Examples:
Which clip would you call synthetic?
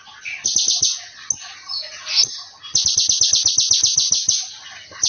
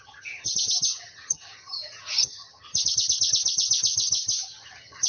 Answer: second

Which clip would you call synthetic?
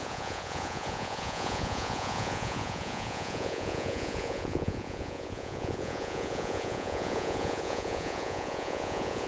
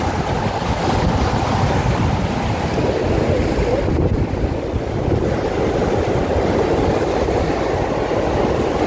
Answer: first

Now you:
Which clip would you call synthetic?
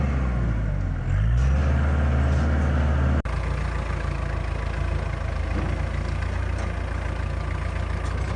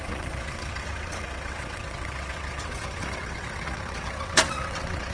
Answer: second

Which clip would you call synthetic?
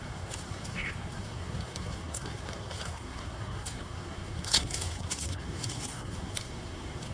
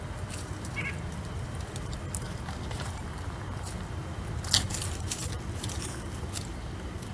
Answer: first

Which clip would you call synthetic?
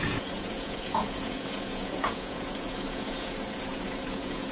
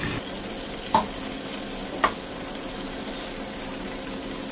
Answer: first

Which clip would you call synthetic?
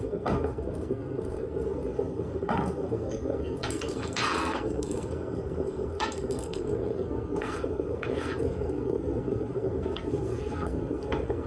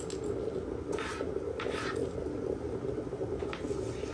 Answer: first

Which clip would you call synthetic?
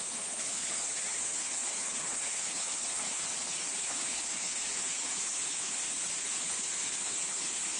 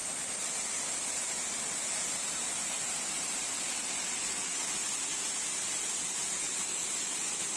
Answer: first